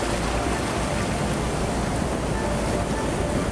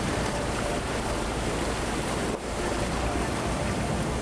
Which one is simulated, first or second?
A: second